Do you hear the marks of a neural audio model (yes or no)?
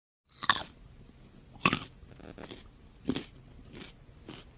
no